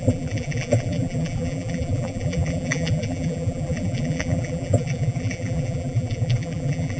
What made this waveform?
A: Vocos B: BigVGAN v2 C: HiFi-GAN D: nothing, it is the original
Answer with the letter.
B